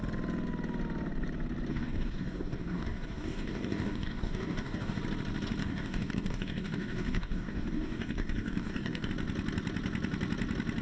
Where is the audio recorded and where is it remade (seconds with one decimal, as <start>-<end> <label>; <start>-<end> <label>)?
0.0-1.7 recorded; 1.7-5.0 remade; 5.0-5.6 recorded; 5.6-9.1 remade; 9.1-10.8 recorded